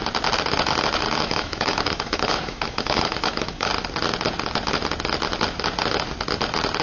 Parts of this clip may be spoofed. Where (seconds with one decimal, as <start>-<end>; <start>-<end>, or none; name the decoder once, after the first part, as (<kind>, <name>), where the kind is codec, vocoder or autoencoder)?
1.2-3.7 (autoencoder, DAC-VAE)